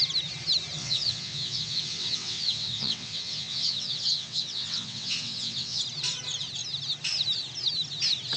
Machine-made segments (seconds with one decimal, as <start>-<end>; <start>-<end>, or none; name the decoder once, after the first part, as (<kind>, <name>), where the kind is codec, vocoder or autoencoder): 0.8-5.8 (vocoder, WaveNeXt)

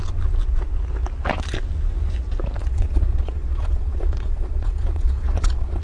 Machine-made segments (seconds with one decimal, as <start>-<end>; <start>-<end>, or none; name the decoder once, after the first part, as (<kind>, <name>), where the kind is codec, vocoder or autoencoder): 2.6-5.8 (vocoder, Vocos)

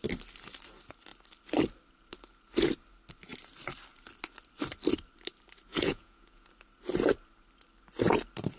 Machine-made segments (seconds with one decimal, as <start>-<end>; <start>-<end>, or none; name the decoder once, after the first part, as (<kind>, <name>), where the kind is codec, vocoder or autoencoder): 5.7-6.5 (vocoder, Vocos)

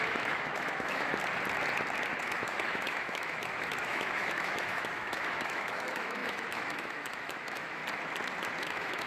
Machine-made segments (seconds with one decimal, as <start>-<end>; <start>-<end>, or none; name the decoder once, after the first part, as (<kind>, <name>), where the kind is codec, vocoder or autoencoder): 0.0-1.1 (autoencoder, DAC-VAE); 2.2-7.8; 8.6-9.1

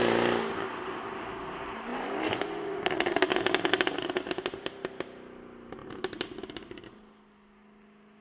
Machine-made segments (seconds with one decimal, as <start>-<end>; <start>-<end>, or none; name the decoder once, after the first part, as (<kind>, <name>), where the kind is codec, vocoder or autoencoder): 1.9-3.2 (vocoder, Vocos)

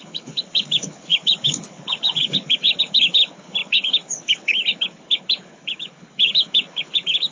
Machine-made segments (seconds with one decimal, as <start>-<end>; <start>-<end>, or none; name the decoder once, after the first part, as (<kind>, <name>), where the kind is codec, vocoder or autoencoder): 0.0-7.3 (codec, HILCodec)

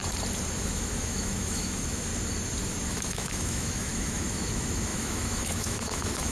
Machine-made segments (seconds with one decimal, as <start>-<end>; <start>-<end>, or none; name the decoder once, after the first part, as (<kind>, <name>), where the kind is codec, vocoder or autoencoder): 0.6-2.1 (autoencoder, DAC-VAE); 2.9-6.3

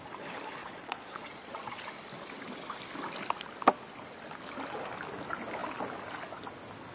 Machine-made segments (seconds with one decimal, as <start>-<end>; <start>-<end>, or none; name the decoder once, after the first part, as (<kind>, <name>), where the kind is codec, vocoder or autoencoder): 0.6-1.8 (vocoder, Vocos)